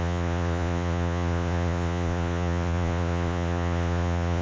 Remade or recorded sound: remade